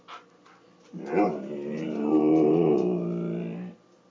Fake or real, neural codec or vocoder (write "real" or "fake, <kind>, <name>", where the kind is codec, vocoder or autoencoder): real